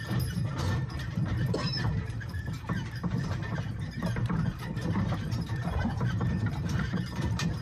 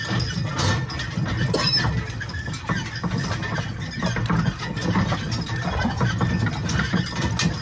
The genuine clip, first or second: second